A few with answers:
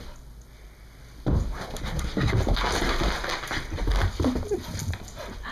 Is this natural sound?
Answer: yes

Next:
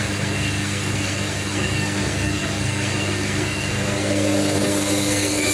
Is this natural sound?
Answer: no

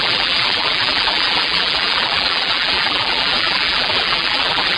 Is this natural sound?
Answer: no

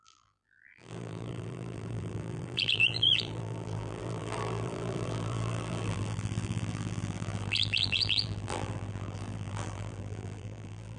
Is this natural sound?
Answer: no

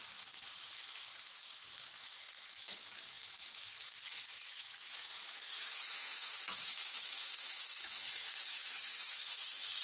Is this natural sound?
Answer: no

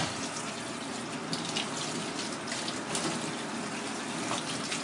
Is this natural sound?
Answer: yes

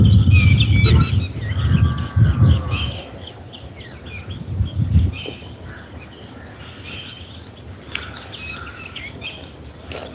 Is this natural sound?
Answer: yes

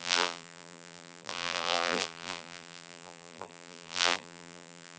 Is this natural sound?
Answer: no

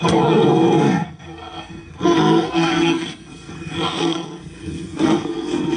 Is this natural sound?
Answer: no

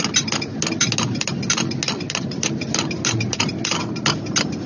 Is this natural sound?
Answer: yes